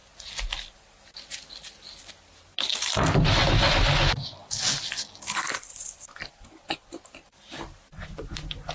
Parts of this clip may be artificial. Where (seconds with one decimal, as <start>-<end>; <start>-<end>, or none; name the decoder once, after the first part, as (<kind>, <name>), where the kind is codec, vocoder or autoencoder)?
none